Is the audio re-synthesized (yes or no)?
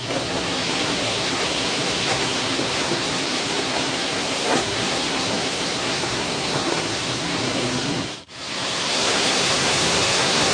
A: yes